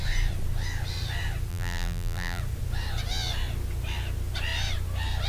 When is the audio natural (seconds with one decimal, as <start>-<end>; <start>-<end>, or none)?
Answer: 0.0-1.5; 2.4-5.3